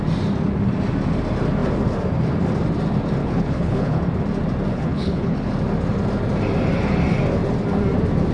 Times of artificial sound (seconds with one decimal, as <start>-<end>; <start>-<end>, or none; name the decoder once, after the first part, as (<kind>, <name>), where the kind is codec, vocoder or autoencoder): 3.2-4.0 (codec, HILCodec); 4.7-5.5